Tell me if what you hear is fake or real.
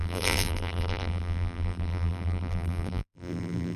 fake